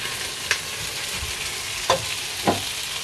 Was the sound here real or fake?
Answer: real